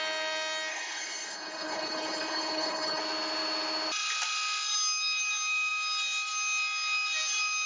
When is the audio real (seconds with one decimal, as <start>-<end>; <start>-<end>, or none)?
0.0-0.7; 3.0-7.7